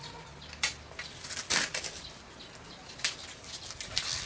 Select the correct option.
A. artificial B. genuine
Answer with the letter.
B